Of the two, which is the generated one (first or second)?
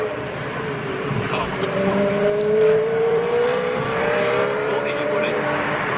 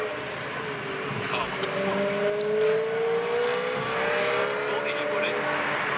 first